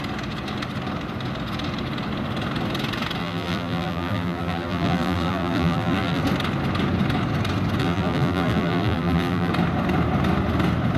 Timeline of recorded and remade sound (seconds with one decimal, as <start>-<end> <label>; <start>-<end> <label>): 0.0-3.2 recorded; 3.2-6.2 remade; 6.2-7.8 recorded; 7.8-9.5 remade; 9.5-11.0 recorded